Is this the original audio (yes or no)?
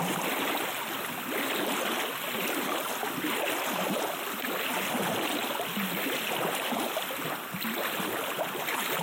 yes